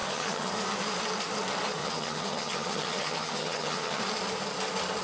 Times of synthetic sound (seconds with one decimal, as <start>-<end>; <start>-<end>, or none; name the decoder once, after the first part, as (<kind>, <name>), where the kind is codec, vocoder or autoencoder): 0.0-0.5 (vocoder, HiFi-GAN); 1.8-4.0